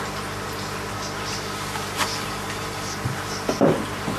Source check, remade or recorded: recorded